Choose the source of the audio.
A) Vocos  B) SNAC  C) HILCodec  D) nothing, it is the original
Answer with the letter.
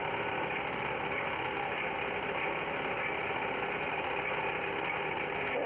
D